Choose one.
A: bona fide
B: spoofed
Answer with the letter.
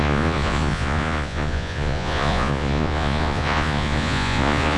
B